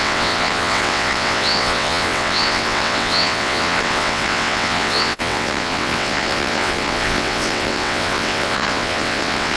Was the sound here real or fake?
fake